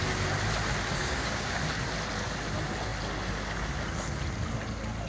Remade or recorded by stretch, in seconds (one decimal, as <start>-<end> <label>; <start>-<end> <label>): 0.0-1.0 recorded; 1.0-1.6 remade; 1.6-5.1 recorded